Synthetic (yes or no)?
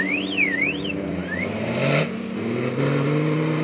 no